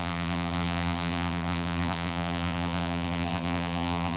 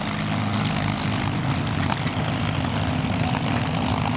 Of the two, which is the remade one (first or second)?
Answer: first